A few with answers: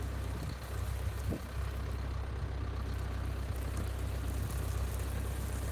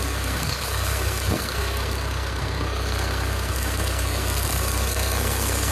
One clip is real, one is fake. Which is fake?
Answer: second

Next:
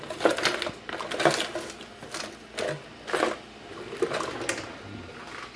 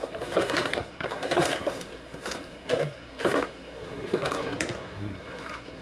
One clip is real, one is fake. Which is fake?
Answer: second